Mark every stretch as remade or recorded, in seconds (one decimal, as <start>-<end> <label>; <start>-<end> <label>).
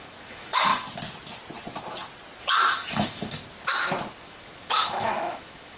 0.0-0.7 remade; 0.7-2.4 recorded; 2.4-3.4 remade; 3.4-4.2 recorded; 4.2-5.8 remade